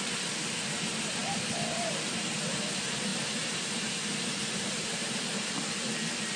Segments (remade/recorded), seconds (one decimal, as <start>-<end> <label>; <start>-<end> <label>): 0.0-3.1 recorded; 3.1-5.1 remade; 5.1-6.4 recorded